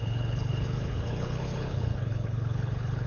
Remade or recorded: remade